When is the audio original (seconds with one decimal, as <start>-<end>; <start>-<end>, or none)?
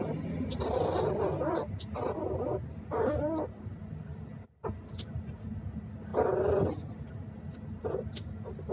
0.0-8.7